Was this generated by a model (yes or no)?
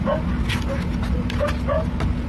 no